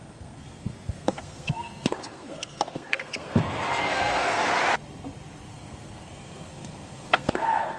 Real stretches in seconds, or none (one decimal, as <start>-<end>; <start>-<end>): 4.5-5.5